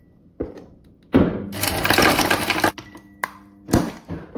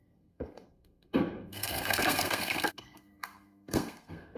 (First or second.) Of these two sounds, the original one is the first